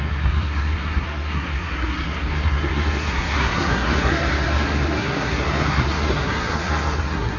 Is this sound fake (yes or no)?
yes